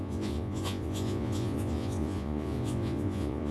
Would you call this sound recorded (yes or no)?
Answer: no